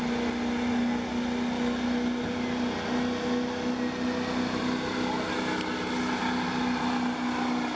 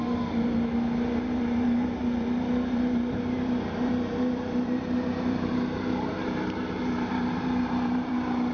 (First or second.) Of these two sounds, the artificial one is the second